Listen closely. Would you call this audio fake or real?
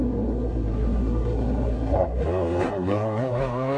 fake